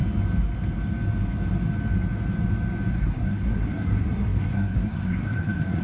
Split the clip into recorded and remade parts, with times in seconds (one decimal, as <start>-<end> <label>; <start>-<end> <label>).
0.0-2.9 recorded; 2.9-5.8 remade